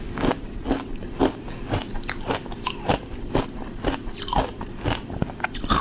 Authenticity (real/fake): real